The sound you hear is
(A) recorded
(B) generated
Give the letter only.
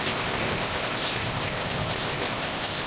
B